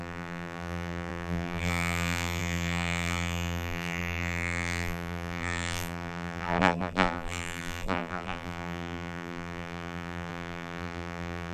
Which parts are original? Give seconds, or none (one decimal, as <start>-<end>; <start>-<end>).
none